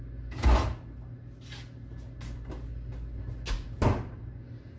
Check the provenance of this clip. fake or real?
real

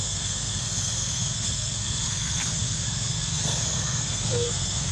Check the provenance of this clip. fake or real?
fake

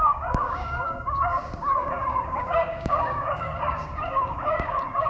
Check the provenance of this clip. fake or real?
fake